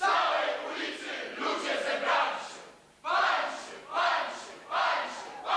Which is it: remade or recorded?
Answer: recorded